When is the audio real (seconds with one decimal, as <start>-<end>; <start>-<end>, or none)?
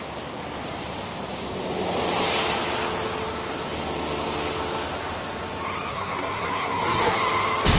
0.0-5.9; 7.2-7.8